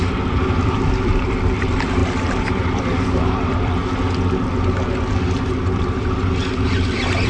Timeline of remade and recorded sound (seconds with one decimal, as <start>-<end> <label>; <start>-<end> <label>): 0.0-2.0 remade; 2.0-2.8 recorded; 2.8-3.8 remade; 3.8-5.1 recorded; 5.1-7.3 remade